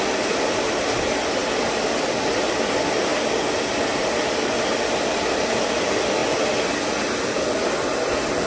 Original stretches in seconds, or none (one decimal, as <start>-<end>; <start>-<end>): 0.0-8.5